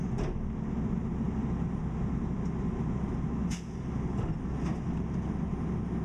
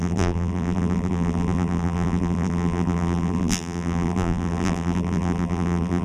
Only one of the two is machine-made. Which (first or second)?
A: second